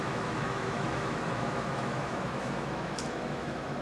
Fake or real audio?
fake